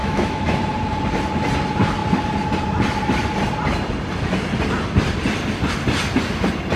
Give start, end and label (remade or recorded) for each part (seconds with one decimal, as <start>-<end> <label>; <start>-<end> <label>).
0.0-0.6 remade; 0.6-6.8 recorded